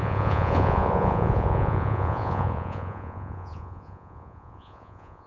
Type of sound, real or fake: fake